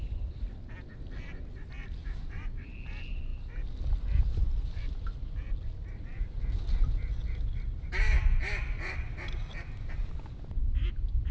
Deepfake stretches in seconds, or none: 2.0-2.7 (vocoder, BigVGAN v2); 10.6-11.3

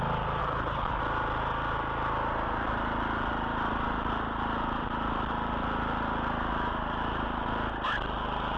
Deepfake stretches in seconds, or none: 0.4-1.0 (codec, HILCodec)

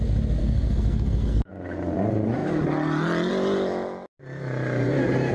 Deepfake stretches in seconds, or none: 0.4-1.5 (codec, SNAC)

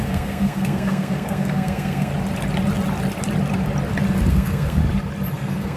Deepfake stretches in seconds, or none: 0.0-2.1 (codec, SNAC); 4.3-4.8; 5.3-5.8

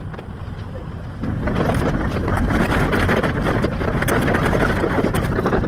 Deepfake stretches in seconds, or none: none

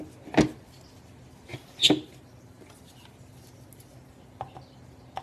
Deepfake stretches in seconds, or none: none

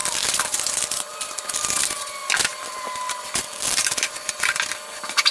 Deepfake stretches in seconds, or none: 0.0-0.7 (vocoder, BigVGAN v2); 2.2-4.5